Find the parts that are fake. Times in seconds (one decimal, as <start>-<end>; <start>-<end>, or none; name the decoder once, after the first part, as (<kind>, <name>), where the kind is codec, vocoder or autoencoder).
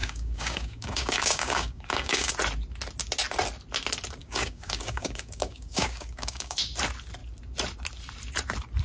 0.0-2.3 (codec, DAC); 4.2-6.6